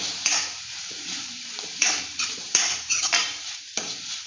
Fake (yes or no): yes